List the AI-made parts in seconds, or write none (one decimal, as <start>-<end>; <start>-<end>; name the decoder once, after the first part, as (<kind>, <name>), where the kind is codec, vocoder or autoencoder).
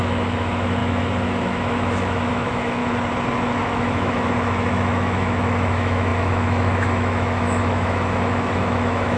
0.0-2.8 (autoencoder, DAC-VAE); 3.6-9.2